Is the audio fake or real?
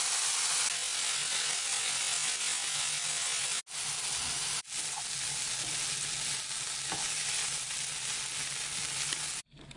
real